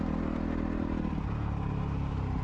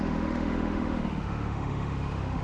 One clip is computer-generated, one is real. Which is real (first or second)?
first